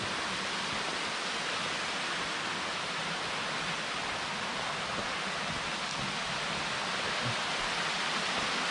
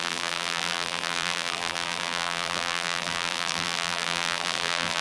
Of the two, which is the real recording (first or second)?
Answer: first